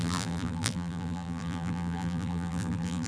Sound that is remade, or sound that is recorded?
remade